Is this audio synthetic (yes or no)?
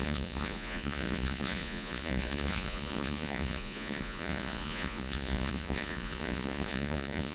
yes